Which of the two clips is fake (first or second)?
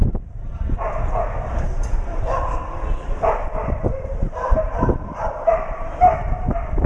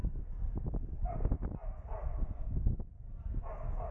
first